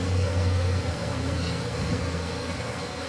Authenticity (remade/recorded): remade